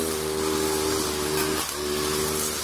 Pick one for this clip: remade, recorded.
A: recorded